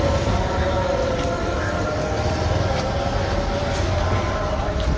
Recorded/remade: recorded